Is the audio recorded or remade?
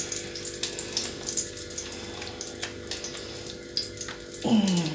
recorded